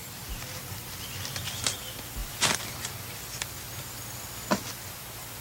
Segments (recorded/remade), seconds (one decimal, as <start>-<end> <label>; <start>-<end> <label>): 0.0-2.2 recorded; 2.2-5.4 remade